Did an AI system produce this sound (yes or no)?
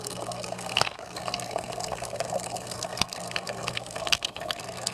yes